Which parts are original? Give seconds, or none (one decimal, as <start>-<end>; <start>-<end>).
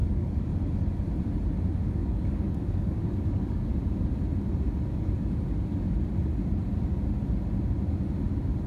0.5-1.8; 3.6-8.7